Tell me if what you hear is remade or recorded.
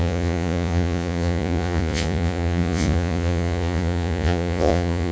remade